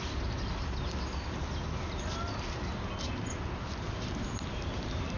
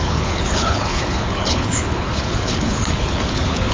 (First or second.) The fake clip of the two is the second